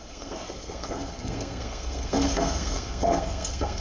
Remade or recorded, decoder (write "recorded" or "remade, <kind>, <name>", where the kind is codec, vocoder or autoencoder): remade, codec, SNAC